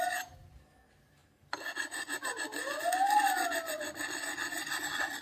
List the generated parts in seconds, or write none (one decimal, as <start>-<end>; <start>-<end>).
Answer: none